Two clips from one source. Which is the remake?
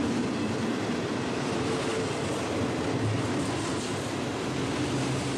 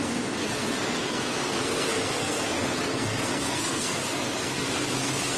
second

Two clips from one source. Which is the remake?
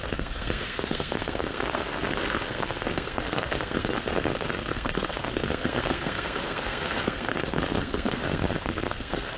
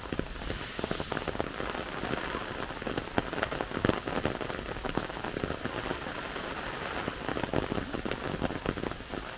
first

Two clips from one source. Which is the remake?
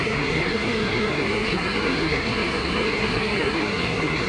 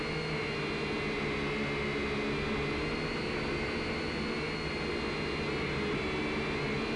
first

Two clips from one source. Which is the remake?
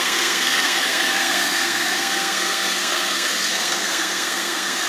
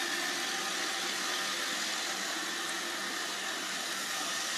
first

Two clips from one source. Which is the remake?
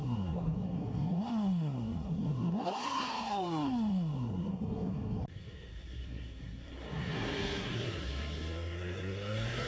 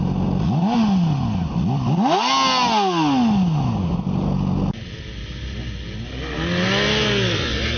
first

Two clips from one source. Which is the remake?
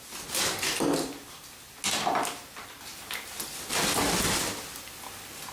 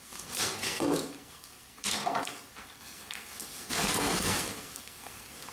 second